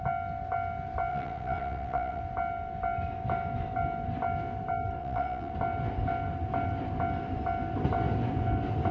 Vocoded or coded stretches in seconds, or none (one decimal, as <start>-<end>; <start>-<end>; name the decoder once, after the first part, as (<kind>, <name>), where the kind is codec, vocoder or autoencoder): 1.1-2.2 (vocoder, WaveNeXt); 5.0-5.5